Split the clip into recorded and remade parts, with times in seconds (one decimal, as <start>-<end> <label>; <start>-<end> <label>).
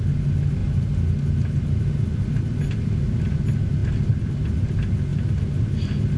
0.0-6.2 recorded